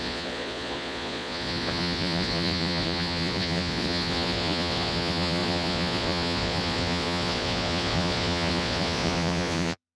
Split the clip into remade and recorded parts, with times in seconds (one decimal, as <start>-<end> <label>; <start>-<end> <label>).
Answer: 0.0-10.0 remade